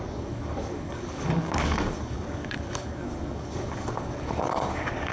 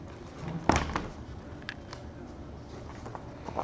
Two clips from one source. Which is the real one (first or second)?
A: second